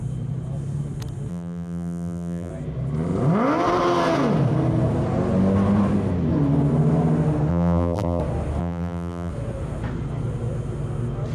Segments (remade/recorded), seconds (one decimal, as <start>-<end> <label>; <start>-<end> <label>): 0.0-1.3 recorded; 1.3-2.5 remade; 2.5-7.5 recorded; 7.5-8.2 remade; 8.2-8.6 recorded; 8.6-9.3 remade; 9.3-11.3 recorded

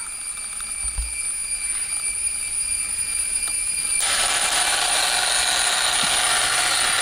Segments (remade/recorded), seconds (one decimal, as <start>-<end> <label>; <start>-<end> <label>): 0.0-3.9 recorded; 3.9-5.0 remade; 5.0-7.0 recorded

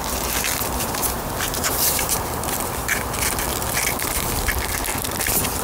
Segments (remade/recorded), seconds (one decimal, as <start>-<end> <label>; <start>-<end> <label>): 0.0-1.0 recorded; 1.0-3.0 remade; 3.0-5.6 recorded

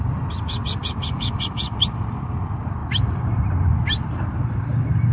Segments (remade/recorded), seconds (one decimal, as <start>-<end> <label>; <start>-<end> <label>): 0.0-0.8 recorded; 0.8-2.0 remade; 2.0-2.8 recorded; 2.8-3.4 remade; 3.4-5.1 recorded

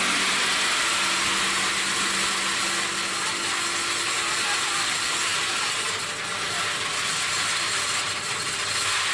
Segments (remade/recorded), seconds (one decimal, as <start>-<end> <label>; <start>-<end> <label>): 0.0-9.1 recorded

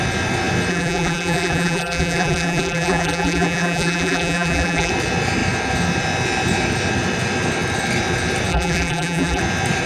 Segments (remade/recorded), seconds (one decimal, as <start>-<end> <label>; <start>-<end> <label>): 0.0-0.7 recorded; 0.7-4.9 remade; 4.9-8.5 recorded; 8.5-9.4 remade; 9.4-9.9 recorded

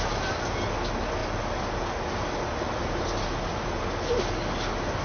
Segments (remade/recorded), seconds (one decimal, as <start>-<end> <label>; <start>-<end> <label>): 0.0-5.0 recorded